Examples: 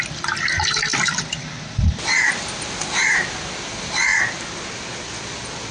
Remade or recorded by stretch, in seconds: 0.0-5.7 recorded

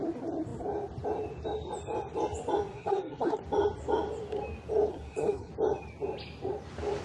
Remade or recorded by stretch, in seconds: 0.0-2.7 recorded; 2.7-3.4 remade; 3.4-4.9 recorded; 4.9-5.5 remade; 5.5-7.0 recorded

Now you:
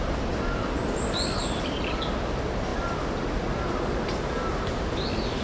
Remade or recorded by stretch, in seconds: 0.0-5.4 recorded